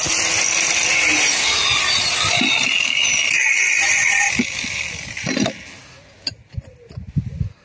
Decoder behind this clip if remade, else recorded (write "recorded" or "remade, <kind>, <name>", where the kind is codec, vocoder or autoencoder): recorded